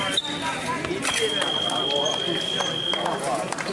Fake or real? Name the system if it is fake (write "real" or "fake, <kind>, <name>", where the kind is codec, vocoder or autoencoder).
real